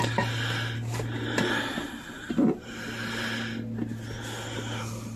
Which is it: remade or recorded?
recorded